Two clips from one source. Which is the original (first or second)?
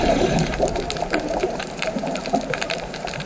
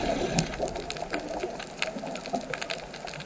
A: second